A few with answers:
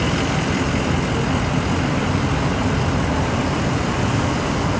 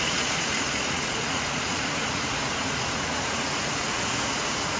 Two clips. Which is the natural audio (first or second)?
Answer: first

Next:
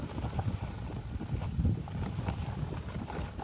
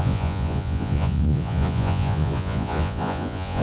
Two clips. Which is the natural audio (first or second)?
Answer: first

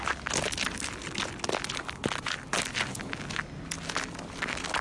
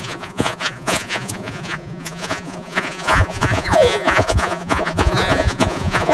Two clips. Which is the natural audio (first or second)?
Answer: first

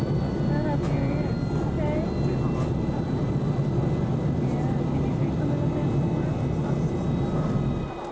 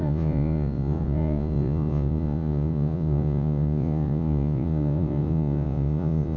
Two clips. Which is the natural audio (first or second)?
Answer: first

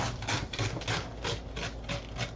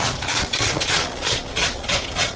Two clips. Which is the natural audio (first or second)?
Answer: first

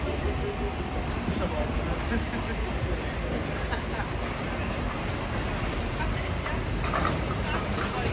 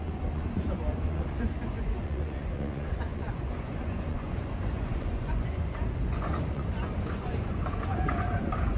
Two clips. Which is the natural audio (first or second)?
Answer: first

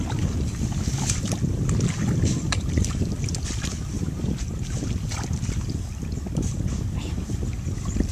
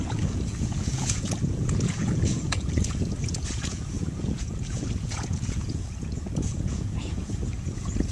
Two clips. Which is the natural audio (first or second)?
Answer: first